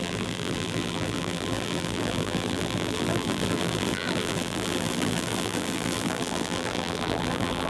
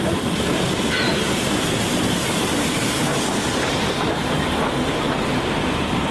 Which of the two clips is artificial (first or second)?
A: first